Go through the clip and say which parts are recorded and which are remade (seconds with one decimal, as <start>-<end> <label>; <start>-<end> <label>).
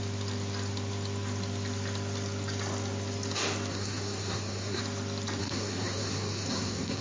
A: 0.0-3.7 recorded; 3.7-4.8 remade; 4.8-5.4 recorded; 5.4-7.0 remade